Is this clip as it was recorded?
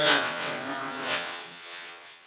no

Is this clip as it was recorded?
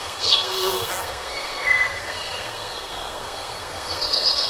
no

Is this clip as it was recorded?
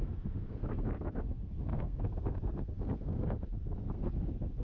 no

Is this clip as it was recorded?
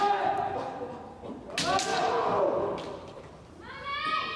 yes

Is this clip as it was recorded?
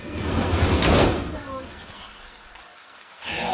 no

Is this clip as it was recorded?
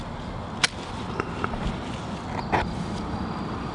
yes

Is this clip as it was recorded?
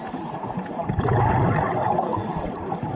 yes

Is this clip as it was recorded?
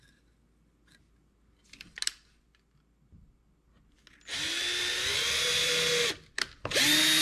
yes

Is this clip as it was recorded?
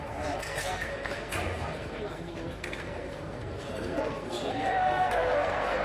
no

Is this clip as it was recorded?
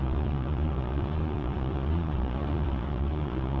no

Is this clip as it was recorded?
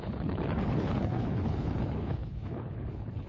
no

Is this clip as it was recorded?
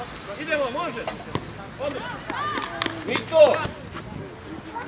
yes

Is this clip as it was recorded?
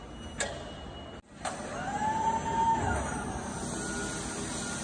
yes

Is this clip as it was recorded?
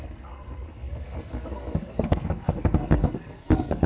no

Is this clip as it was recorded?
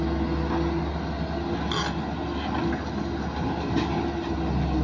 yes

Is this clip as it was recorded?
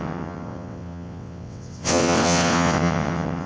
no